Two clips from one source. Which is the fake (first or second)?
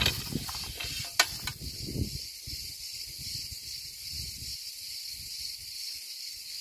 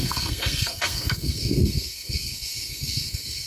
second